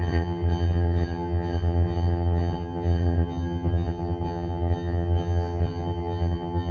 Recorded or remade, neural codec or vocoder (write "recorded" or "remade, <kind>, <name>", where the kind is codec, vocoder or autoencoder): remade, vocoder, HiFi-GAN